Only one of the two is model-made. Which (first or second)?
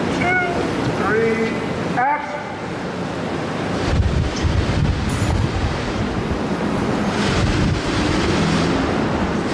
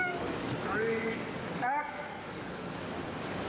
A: second